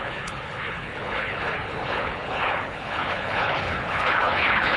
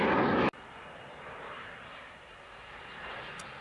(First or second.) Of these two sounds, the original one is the second